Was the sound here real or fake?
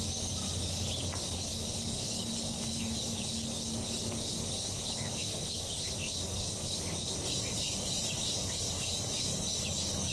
fake